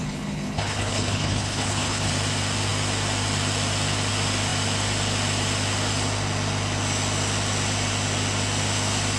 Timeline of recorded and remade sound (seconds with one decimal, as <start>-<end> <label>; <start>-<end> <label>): 0.0-2.1 remade; 2.1-9.2 recorded